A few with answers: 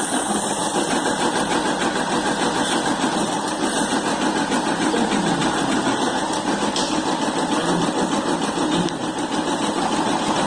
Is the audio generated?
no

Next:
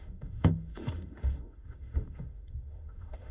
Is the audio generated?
yes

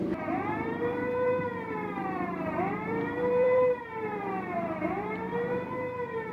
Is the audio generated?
yes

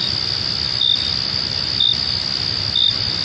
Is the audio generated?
no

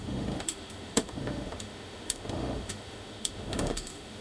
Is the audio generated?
yes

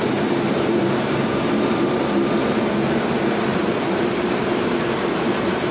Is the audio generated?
yes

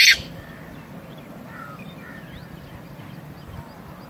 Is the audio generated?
no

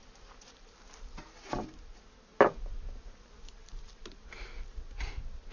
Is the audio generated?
no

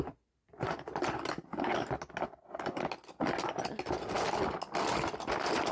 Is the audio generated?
no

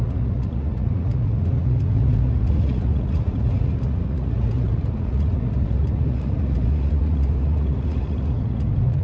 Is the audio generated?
yes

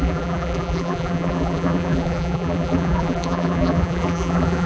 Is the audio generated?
yes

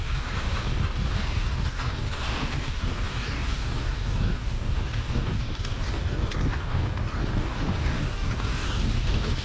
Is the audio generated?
yes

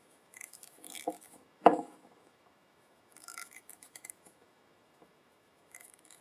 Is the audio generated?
yes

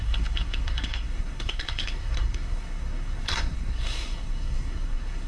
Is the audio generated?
yes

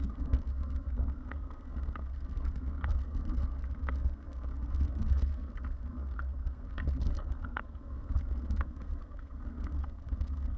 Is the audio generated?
yes